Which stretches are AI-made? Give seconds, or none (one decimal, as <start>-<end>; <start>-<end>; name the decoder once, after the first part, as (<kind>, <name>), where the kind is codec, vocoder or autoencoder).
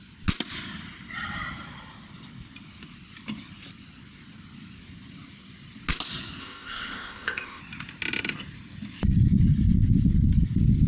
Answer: 6.4-7.6 (codec, ZipCodec)